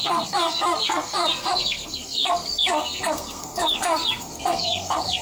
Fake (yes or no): yes